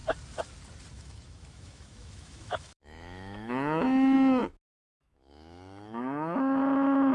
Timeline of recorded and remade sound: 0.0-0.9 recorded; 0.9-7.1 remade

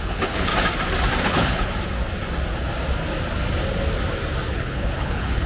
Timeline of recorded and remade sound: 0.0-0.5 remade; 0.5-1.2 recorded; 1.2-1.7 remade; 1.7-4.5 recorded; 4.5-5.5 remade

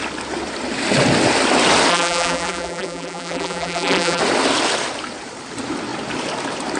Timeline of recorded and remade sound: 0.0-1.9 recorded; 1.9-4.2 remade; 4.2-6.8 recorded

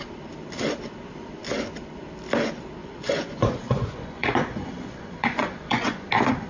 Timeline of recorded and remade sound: 0.0-2.8 recorded; 2.8-6.1 remade; 6.1-6.5 recorded

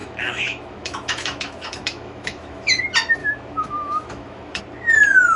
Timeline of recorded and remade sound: 0.0-2.8 remade; 2.8-3.2 recorded; 3.2-4.6 remade; 4.6-5.4 recorded

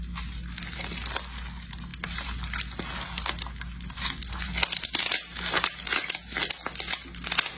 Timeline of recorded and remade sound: 0.0-7.6 recorded